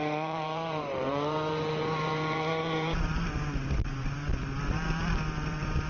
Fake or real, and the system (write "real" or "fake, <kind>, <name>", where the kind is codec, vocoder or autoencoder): fake, vocoder, BigVGAN v2